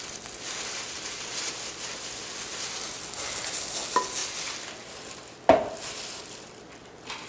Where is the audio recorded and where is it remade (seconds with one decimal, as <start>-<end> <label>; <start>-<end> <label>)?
0.0-7.3 recorded

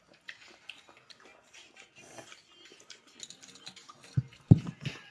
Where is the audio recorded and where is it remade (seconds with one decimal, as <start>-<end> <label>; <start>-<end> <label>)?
0.0-5.1 recorded

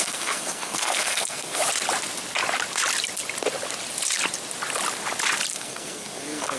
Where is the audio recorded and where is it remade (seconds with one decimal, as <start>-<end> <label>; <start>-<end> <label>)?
0.0-1.6 remade; 1.6-5.5 recorded; 5.5-6.6 remade

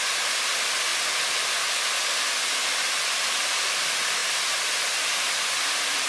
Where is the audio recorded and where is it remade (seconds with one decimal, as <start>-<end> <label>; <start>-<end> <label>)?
0.0-6.1 recorded

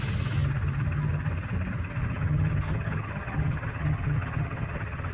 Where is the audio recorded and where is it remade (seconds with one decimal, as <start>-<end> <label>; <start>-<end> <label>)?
0.0-2.0 recorded; 2.0-5.1 remade